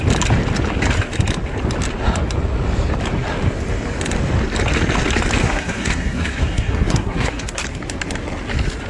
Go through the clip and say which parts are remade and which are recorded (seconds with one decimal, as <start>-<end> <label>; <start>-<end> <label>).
0.0-5.4 recorded; 5.4-7.6 remade; 7.6-8.9 recorded